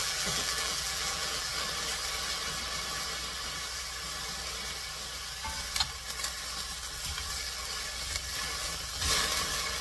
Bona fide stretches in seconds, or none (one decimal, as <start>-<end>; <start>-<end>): 1.5-9.8